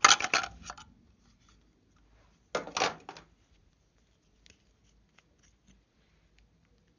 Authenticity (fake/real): real